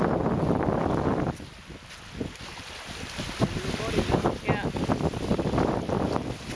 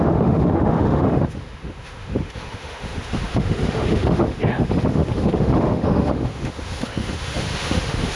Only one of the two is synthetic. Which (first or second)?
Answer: second